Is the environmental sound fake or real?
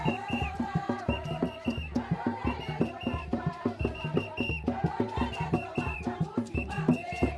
fake